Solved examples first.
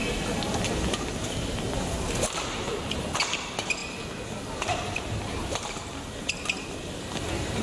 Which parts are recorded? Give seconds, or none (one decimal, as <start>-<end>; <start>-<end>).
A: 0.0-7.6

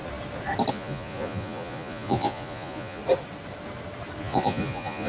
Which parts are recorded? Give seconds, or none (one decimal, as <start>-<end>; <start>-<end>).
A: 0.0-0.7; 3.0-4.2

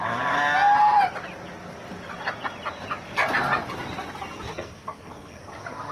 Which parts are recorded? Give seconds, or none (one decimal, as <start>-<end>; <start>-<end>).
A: 0.0-4.5; 5.4-5.9

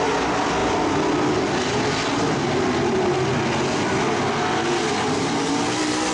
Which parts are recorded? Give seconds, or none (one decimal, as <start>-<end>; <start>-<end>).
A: 0.0-6.1

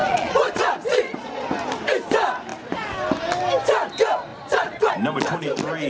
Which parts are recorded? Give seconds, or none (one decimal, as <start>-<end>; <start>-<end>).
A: 1.5-4.3; 4.9-5.9